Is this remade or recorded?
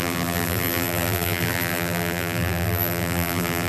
remade